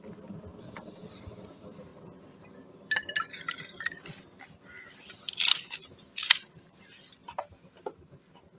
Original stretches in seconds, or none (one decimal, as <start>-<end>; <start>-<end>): 0.0-8.6